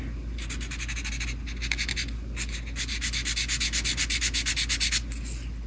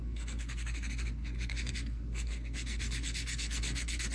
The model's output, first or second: second